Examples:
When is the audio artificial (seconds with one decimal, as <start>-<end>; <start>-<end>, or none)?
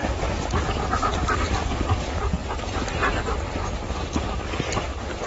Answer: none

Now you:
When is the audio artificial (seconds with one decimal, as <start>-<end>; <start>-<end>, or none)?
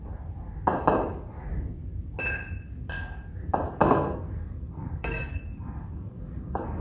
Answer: 3.8-6.8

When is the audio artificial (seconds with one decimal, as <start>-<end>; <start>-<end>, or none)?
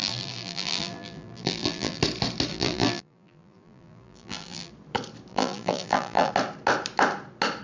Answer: 0.0-2.0; 2.5-4.7; 5.3-6.3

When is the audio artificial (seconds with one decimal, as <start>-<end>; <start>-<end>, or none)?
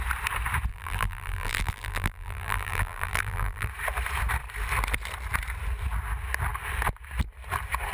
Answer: 0.7-3.7